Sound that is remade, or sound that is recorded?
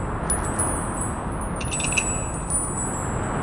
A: recorded